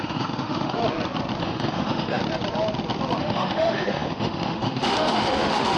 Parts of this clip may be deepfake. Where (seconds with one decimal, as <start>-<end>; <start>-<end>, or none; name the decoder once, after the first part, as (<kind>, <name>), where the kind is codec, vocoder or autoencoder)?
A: 0.0-0.8 (autoencoder, DAC-VAE); 1.4-2.2; 3.2-5.8